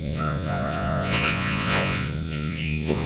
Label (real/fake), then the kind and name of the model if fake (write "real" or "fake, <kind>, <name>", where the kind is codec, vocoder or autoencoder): fake, vocoder, Vocos